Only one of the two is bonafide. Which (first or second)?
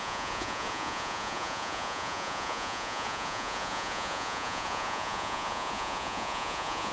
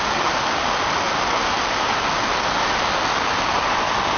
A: second